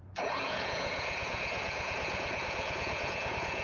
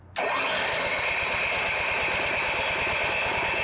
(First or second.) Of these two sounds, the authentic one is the second